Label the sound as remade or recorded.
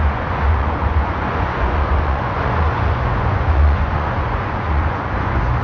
remade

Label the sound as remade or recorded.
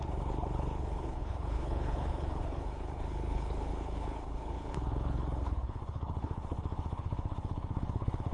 remade